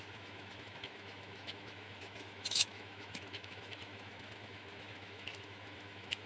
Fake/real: fake